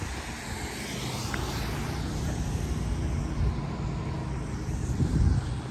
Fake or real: real